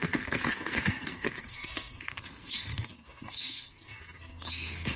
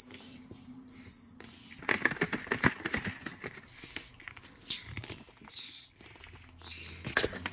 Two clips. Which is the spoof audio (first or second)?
first